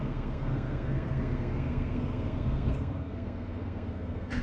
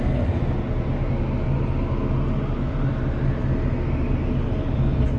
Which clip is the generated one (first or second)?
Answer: first